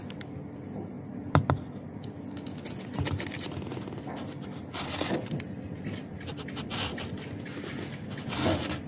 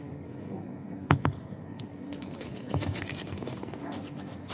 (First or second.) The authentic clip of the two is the first